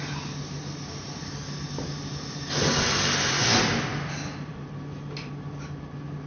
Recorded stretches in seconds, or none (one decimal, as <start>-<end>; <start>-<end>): 0.0-6.3